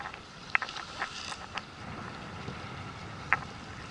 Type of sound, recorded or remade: recorded